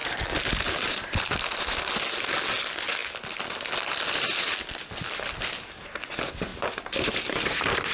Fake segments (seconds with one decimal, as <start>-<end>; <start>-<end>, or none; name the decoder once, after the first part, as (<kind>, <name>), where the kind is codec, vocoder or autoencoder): 0.0-1.8 (vocoder, BigVGAN v2); 6.5-7.9